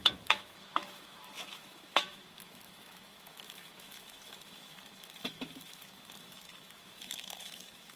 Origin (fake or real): fake